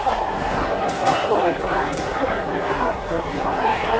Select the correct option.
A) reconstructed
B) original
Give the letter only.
A